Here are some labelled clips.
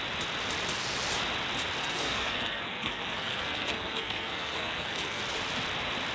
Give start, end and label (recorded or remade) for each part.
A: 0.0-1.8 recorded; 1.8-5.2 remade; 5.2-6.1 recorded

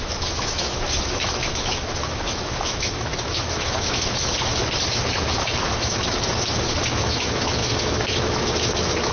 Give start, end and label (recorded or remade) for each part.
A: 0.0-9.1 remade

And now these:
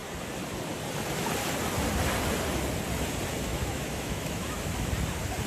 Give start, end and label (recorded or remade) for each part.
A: 0.0-3.5 recorded; 3.5-4.9 remade; 4.9-5.5 recorded

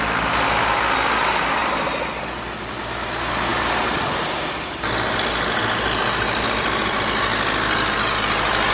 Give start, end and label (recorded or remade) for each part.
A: 0.0-8.7 recorded

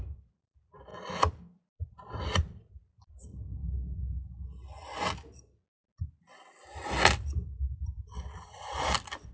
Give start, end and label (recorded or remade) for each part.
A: 0.0-0.9 remade; 0.9-1.6 recorded; 1.6-3.6 remade; 3.6-6.0 recorded; 6.0-9.3 remade

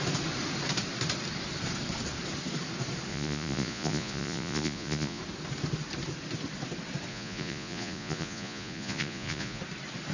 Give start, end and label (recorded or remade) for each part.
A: 0.0-3.1 recorded; 3.1-5.2 remade; 5.2-7.1 recorded; 7.1-9.6 remade; 9.6-10.1 recorded

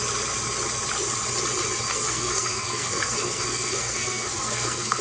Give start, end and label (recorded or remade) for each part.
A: 0.0-1.9 recorded; 1.9-5.0 remade